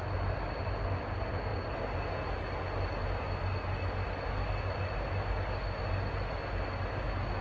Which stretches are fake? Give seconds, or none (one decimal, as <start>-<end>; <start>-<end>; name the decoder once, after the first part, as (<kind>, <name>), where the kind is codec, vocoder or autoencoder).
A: none